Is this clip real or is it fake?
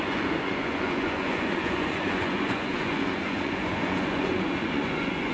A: fake